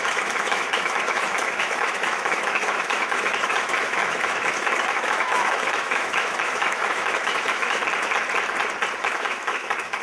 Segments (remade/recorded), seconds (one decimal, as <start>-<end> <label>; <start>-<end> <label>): 0.0-7.8 remade; 7.8-9.0 recorded; 9.0-10.0 remade